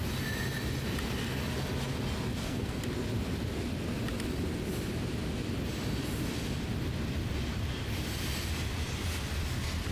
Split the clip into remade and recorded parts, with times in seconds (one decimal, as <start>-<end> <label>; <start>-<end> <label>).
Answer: 0.0-2.3 recorded; 2.3-2.8 remade; 2.8-9.9 recorded